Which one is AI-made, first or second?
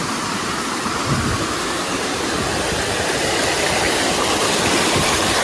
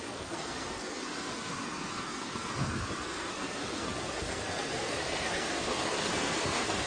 second